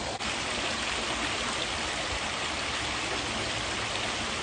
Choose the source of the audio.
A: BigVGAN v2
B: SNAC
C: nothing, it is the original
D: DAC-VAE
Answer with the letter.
C